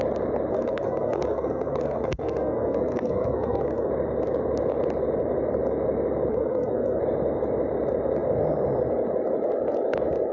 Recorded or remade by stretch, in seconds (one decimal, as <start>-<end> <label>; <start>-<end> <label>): 0.0-0.5 recorded; 0.5-3.9 remade; 3.9-6.3 recorded; 6.3-7.0 remade; 7.0-10.3 recorded